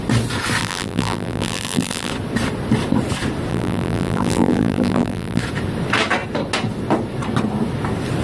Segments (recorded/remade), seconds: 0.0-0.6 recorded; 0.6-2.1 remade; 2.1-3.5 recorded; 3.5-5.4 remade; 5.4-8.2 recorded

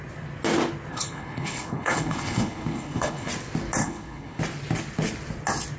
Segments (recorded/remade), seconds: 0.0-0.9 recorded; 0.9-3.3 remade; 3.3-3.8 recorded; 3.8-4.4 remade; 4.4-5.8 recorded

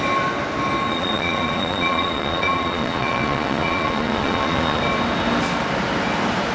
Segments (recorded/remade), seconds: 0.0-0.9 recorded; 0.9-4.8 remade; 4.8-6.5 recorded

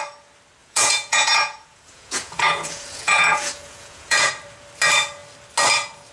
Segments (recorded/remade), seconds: 0.0-0.6 recorded; 0.6-4.3 remade; 4.3-6.1 recorded